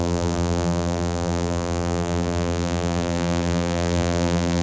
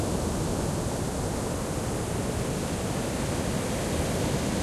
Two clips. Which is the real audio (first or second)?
second